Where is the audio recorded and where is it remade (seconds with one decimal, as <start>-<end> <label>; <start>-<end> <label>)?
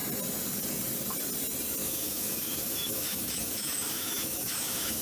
0.0-1.8 recorded; 1.8-5.0 remade